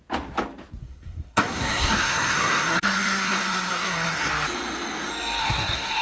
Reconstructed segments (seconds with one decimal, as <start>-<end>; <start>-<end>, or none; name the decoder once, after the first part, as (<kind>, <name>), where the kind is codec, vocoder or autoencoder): 0.8-4.3 (codec, SNAC); 5.4-6.0